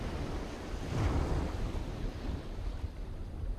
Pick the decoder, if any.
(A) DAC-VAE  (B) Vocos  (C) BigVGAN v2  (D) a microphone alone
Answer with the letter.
D